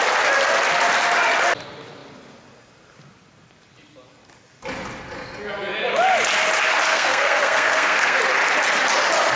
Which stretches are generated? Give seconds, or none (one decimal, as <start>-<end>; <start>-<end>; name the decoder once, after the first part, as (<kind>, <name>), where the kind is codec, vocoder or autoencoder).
6.9-8.2 (codec, SNAC)